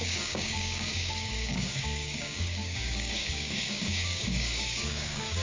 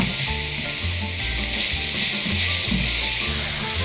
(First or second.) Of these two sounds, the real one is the second